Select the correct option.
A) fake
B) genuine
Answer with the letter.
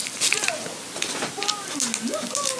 B